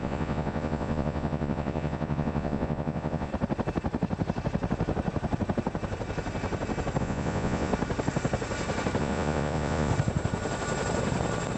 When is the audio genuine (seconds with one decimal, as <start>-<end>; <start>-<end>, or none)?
3.3-7.0; 7.7-9.0; 9.9-11.6